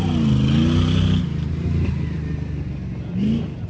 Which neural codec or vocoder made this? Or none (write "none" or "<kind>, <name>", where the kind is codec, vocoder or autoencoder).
none